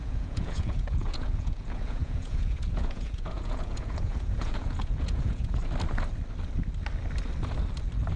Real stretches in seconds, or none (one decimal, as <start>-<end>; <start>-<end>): 5.6-8.2